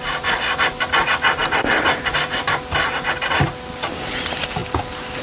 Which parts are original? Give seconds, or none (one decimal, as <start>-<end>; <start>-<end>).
0.0-5.2